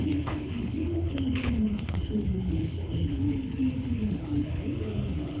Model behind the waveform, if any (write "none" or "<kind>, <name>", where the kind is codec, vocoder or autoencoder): codec, HILCodec